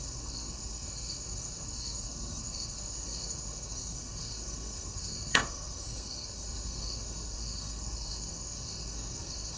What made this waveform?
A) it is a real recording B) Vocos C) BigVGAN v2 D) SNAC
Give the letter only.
D